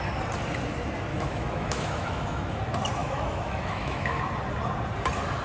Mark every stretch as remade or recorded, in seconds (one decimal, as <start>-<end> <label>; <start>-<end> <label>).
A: 0.0-1.1 recorded; 1.1-2.6 remade; 2.6-3.0 recorded; 3.0-4.2 remade; 4.2-5.4 recorded